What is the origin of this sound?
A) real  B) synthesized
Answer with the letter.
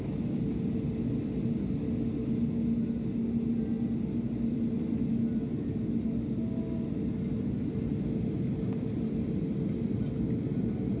A